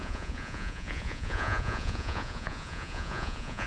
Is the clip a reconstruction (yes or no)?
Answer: yes